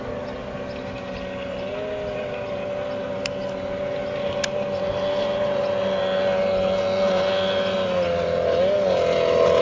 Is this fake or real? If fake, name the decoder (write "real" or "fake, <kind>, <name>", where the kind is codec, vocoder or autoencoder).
real